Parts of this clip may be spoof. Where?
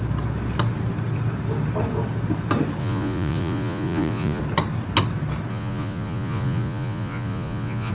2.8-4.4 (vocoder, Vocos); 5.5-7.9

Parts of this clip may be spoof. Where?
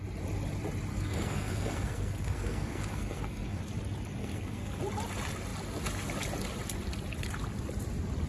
0.9-3.6 (codec, SNAC); 4.2-4.8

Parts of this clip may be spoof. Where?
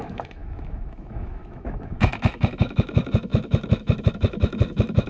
0.0-5.1 (autoencoder, DAC-VAE)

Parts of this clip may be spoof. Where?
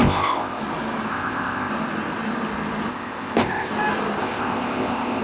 0.0-0.6 (codec, ZipCodec); 1.1-1.7; 2.9-3.7; 4.2-5.2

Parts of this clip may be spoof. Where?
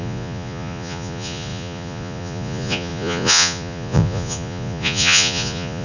0.0-5.8 (vocoder, Vocos)